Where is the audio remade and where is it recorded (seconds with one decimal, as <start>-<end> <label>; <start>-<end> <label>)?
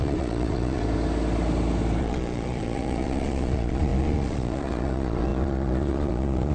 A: 0.0-0.8 remade; 0.8-2.0 recorded; 2.0-6.5 remade